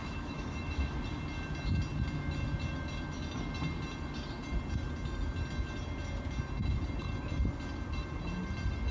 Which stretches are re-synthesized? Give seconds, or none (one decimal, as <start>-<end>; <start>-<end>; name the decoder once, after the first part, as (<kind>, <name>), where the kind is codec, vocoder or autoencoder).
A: 0.0-1.0 (autoencoder, DAC-VAE)